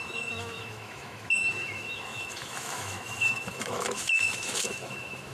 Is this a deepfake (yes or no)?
yes